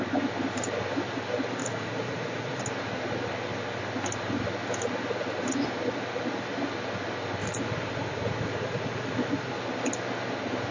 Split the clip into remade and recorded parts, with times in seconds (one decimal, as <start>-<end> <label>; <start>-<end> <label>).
0.0-1.6 recorded; 1.6-2.6 remade; 2.6-7.4 recorded; 7.4-9.5 remade; 9.5-10.7 recorded